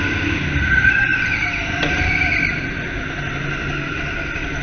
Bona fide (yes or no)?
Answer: yes